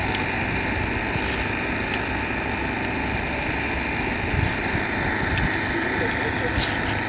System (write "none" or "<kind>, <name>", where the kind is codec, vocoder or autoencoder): none